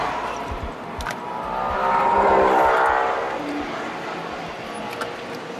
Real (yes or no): yes